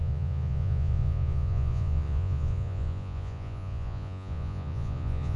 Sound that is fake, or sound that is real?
fake